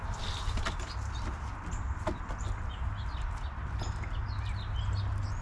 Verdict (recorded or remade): recorded